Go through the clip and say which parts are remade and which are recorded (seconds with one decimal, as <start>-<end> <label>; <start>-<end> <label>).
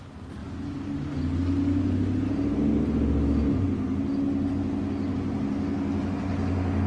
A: 0.0-6.9 recorded